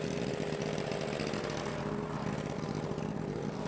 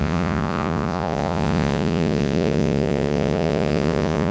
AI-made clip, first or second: second